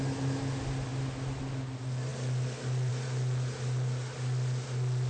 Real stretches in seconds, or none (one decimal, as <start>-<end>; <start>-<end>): 0.0-5.1